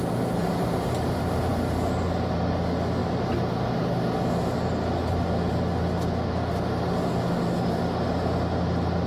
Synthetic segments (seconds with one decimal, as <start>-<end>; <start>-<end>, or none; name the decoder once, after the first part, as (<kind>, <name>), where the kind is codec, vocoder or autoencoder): 0.4-1.2 (vocoder, BigVGAN v2)

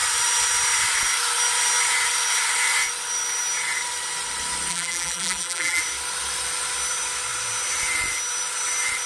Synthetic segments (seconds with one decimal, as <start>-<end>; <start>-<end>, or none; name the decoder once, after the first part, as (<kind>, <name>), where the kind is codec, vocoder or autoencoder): 4.7-5.8 (vocoder, BigVGAN v2)

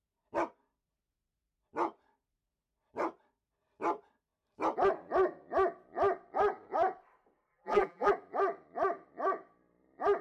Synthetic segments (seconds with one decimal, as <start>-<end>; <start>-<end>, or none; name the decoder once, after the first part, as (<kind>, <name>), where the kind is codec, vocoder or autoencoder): 7.5-8.1 (vocoder, BigVGAN v2)

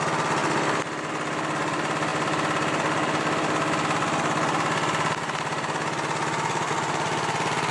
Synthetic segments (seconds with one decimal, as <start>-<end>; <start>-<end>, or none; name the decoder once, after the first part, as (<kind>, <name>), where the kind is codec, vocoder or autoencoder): none

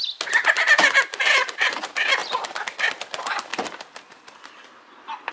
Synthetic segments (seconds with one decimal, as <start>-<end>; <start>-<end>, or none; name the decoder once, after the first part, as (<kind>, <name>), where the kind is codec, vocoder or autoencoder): 1.2-1.7 (vocoder, BigVGAN v2)